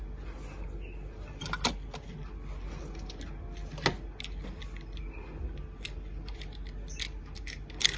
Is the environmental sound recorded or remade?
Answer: recorded